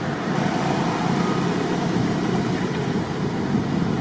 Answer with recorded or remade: recorded